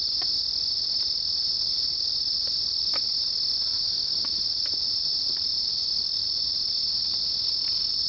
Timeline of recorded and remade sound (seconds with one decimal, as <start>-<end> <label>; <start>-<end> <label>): 0.0-8.1 recorded